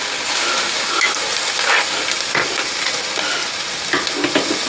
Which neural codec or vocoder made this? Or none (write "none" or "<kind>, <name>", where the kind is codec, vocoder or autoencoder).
none